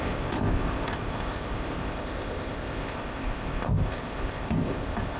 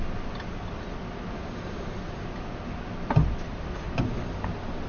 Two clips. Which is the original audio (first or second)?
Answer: second